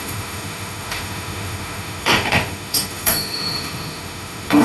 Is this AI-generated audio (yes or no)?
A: yes